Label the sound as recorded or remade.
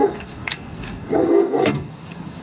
remade